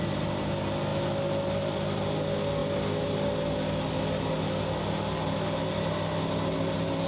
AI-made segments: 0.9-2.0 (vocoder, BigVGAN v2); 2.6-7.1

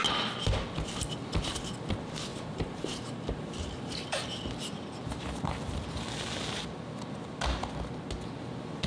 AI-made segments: 2.3-3.9 (vocoder, BigVGAN v2)

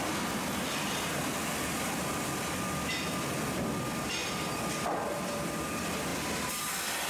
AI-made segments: 6.1-6.6 (vocoder, BigVGAN v2)